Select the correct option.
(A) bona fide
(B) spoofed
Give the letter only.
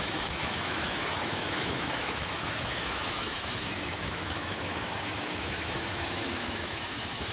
B